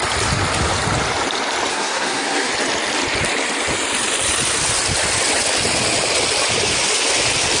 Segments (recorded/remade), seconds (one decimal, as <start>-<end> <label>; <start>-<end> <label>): 0.0-1.7 recorded; 1.7-2.5 remade; 2.5-7.6 recorded